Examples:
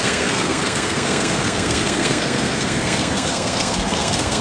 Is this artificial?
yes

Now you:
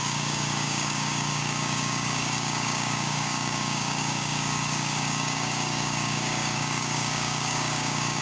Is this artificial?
yes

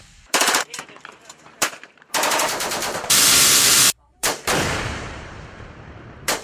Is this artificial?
yes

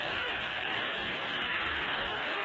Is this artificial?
yes